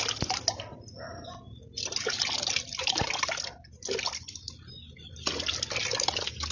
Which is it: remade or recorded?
recorded